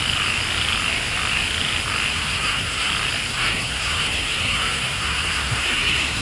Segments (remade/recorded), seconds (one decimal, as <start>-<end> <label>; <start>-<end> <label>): 0.0-2.1 recorded; 2.1-2.9 remade; 2.9-3.3 recorded; 3.3-6.2 remade